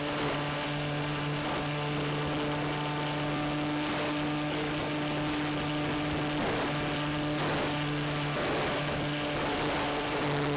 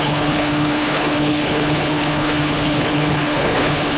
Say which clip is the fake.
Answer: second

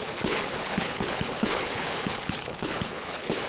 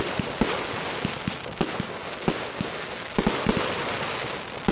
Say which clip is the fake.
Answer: first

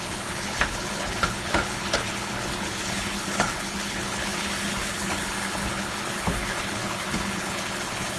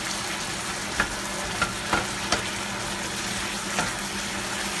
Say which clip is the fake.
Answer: first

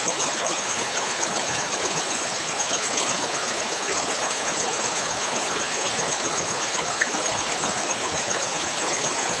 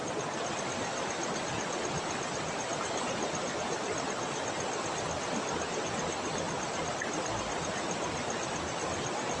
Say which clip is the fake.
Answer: first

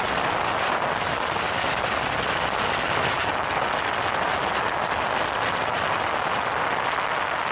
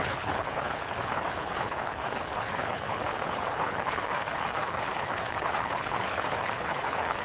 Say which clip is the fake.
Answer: second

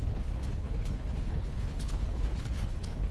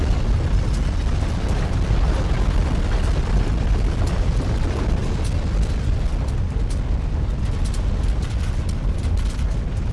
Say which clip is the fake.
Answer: first